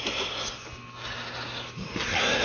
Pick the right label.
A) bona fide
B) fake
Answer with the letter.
A